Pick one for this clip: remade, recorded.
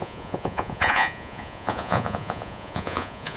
remade